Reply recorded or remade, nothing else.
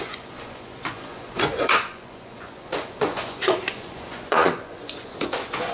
remade